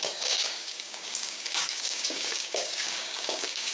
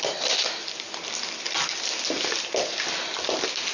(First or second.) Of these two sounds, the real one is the second